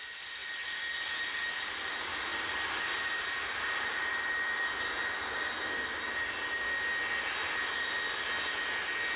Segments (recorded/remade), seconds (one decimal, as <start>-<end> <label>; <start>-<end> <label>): 0.0-9.2 recorded